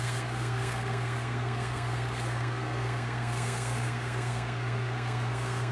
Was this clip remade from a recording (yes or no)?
yes